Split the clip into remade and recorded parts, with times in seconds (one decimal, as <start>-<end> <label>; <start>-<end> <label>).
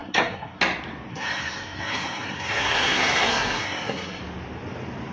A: 0.0-0.6 remade; 0.6-1.1 recorded; 1.1-4.2 remade; 4.2-5.1 recorded